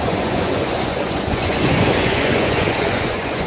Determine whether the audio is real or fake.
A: fake